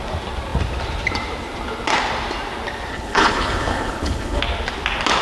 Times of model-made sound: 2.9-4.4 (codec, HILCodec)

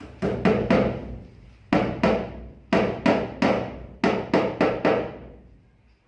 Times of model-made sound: none

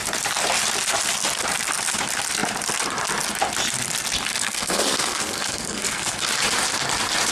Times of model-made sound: 4.4-6.3 (codec, SNAC)

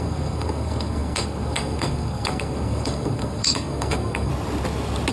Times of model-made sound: 0.0-4.3 (codec, SNAC)